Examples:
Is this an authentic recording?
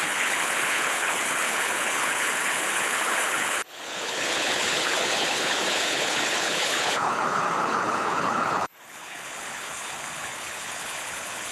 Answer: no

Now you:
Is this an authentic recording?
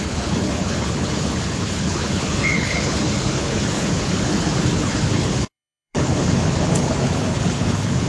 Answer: no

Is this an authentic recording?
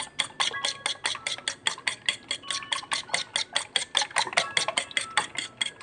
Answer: yes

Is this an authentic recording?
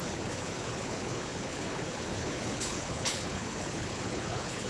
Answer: no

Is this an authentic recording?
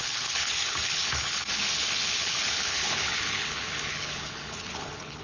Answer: no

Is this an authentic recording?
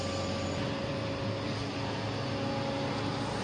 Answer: yes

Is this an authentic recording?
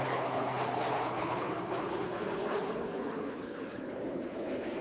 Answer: no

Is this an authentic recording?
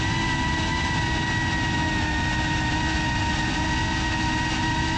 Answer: yes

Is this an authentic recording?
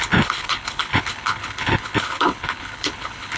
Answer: no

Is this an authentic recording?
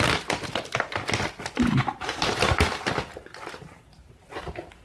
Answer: yes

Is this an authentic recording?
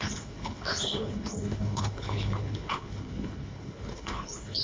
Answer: no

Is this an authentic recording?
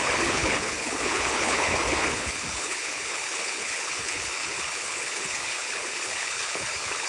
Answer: no